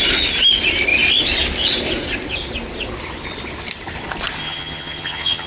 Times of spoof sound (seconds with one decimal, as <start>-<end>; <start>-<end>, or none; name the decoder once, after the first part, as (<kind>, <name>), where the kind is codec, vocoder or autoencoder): 4.4-5.5 (vocoder, HiFi-GAN)